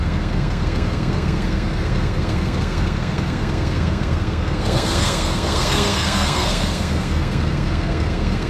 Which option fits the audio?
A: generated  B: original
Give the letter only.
A